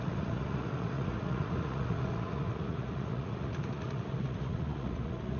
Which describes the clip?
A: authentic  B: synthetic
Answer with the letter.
B